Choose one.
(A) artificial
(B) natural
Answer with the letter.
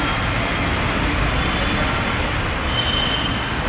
B